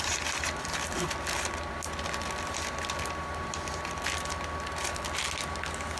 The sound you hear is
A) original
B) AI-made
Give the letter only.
A